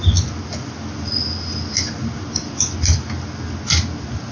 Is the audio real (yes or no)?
yes